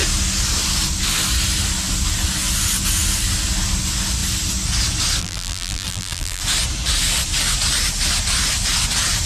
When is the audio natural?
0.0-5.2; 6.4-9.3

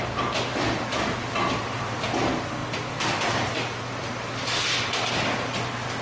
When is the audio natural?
0.0-0.5; 1.9-2.6; 5.2-6.0